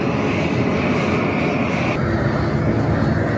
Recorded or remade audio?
recorded